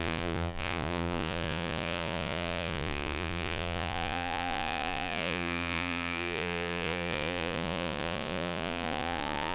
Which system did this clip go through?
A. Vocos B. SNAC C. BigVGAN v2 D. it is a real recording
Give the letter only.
A